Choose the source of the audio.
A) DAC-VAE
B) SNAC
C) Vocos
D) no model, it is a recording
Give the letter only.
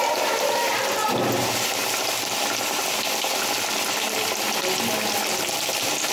D